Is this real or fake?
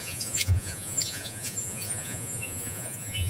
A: fake